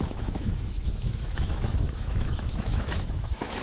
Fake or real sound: fake